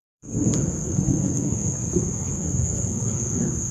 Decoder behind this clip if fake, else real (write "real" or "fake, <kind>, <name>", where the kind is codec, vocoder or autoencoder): fake, codec, SNAC